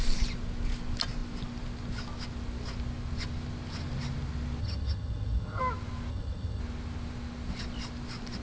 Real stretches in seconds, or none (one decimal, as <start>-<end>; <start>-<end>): 0.0-4.6; 5.6-6.1; 6.6-8.4